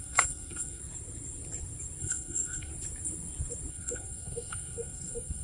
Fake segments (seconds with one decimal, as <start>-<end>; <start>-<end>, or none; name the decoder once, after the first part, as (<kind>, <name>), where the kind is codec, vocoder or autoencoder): 0.0-0.8 (codec, SNAC); 2.0-2.7; 3.7-5.4